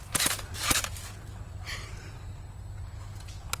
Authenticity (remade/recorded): recorded